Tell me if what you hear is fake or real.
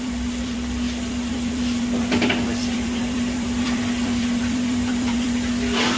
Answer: fake